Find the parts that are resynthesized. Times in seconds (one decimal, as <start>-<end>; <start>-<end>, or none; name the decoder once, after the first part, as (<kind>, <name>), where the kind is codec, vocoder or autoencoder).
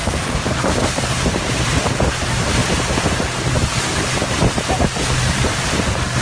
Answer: 0.0-2.6 (vocoder, BigVGAN v2); 4.9-6.2